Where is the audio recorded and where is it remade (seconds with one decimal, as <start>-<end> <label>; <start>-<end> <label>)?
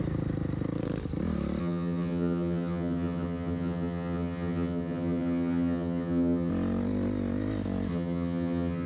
0.0-1.6 recorded; 1.6-6.5 remade; 6.5-7.9 recorded; 7.9-8.9 remade